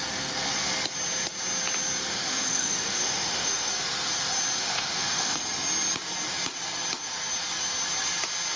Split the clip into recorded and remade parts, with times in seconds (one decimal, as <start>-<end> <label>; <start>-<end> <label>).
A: 0.0-2.1 recorded; 2.1-3.7 remade; 3.7-4.6 recorded; 4.6-5.4 remade; 5.4-8.6 recorded